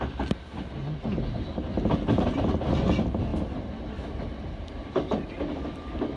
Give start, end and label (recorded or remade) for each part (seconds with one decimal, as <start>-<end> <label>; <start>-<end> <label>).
0.0-6.2 recorded